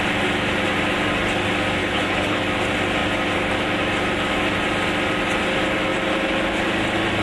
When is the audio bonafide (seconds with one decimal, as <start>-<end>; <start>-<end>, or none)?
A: 0.0-1.8; 2.4-7.2